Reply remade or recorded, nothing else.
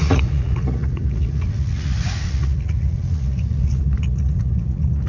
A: remade